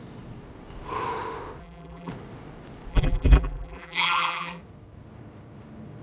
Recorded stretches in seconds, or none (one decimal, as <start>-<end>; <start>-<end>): 0.0-1.6; 2.1-2.9; 4.6-6.0